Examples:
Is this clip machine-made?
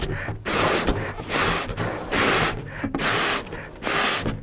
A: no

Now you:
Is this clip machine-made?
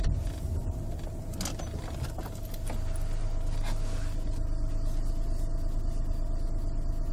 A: no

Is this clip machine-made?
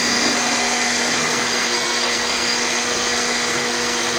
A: yes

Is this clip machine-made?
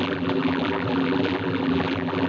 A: yes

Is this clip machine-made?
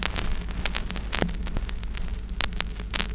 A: no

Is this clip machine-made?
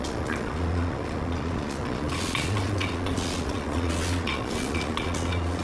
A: yes